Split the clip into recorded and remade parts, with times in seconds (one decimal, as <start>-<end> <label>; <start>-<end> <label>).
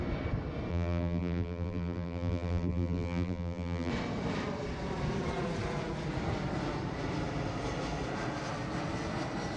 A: 0.0-0.7 recorded; 0.7-3.9 remade; 3.9-9.6 recorded